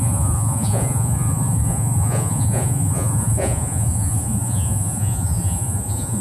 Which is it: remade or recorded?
remade